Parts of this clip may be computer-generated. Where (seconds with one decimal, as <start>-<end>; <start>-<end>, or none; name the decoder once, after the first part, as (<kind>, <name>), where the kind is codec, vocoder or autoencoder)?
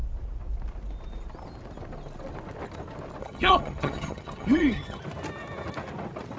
3.2-5.0 (vocoder, HiFi-GAN)